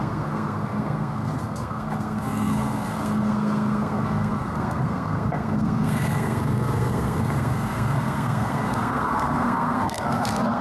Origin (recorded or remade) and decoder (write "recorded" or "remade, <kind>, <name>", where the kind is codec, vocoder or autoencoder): remade, codec, SNAC